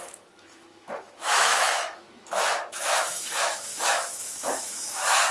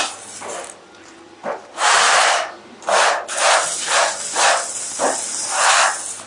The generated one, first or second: first